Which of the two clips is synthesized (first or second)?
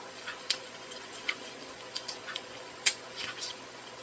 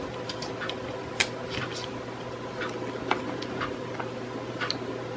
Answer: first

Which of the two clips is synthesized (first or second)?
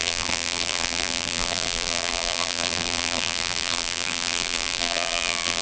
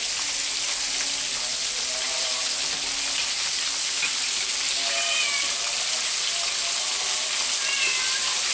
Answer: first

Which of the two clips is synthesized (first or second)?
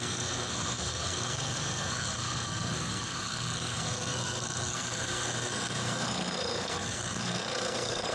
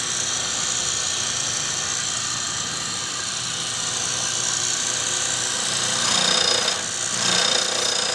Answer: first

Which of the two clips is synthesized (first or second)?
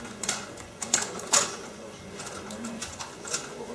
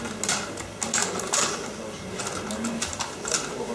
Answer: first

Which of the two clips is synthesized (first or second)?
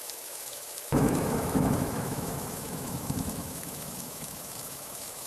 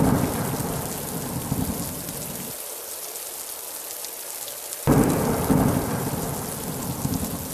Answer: first